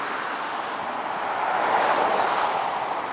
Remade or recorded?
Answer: recorded